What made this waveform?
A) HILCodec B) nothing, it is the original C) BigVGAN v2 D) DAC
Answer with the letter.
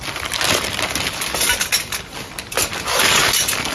B